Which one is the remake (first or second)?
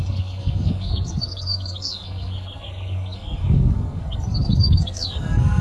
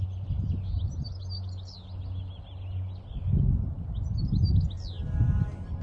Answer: first